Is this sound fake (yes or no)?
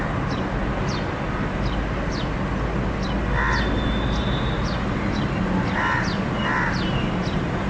no